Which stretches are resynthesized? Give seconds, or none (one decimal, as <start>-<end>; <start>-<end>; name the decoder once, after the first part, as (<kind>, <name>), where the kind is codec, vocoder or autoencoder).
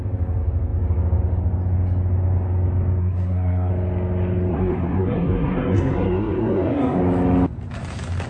3.0-3.7 (codec, SNAC); 4.5-7.0